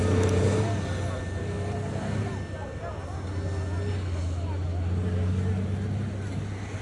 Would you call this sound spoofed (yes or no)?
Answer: no